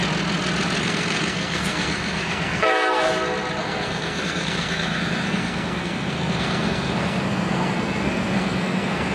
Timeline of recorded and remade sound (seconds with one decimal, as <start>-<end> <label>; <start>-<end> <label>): 0.0-0.8 recorded; 0.8-3.1 remade; 3.1-3.6 recorded; 3.6-9.1 remade